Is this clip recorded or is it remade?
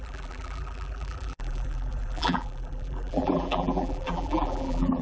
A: remade